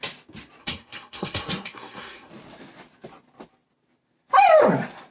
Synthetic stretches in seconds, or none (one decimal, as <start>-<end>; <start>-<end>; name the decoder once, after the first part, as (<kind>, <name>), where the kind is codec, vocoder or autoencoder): 0.6-2.3 (codec, SNAC)